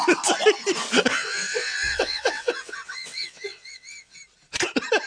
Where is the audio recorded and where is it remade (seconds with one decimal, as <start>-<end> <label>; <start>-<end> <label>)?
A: 0.0-1.1 recorded; 1.1-4.2 remade; 4.2-5.1 recorded